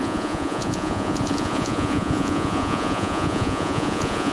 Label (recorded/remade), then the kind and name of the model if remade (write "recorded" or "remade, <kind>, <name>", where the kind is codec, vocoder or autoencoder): remade, vocoder, Vocos